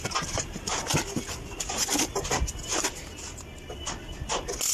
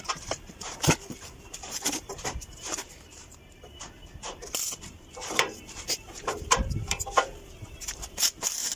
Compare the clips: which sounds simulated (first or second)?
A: second